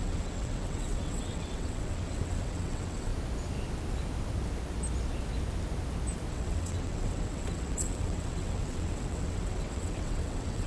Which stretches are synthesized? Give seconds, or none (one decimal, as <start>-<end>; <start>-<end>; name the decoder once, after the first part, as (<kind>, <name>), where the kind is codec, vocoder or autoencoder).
0.0-3.1 (vocoder, WaveNeXt); 6.3-10.7